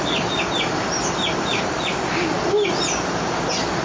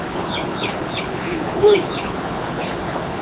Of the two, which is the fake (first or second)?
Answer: second